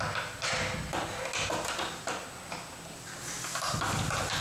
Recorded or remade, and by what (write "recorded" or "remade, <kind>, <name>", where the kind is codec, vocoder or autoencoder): recorded